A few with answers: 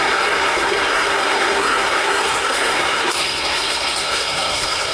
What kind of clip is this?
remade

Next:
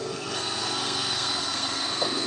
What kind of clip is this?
remade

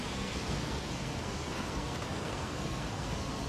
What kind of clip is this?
remade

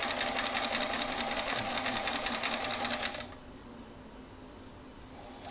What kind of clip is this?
recorded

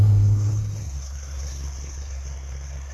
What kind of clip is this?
remade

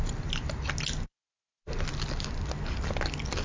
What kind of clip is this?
recorded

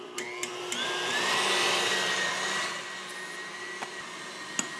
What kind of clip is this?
recorded